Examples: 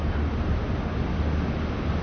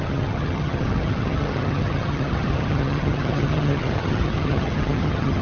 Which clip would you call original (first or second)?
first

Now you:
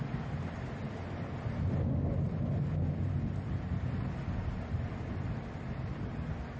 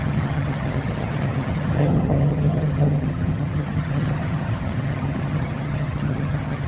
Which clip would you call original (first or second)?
first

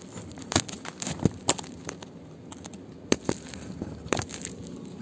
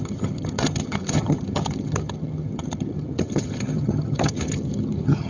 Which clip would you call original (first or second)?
first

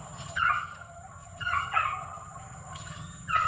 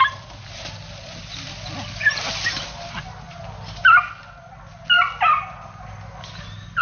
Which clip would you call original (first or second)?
second